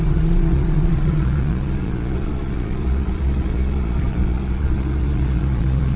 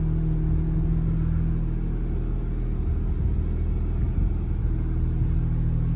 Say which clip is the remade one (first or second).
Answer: first